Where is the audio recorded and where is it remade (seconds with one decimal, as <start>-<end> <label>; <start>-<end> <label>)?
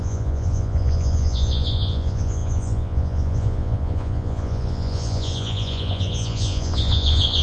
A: 0.0-7.4 remade